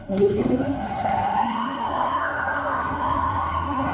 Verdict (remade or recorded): remade